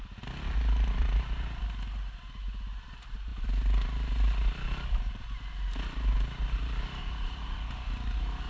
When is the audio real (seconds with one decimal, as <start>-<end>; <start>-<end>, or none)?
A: 0.0-7.0; 7.7-8.5